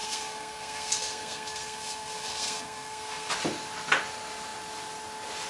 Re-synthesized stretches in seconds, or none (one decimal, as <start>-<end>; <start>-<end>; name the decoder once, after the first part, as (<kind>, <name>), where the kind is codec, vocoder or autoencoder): 0.0-3.3 (codec, SNAC)